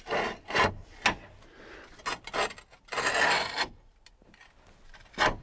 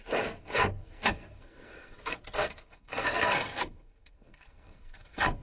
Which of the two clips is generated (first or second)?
second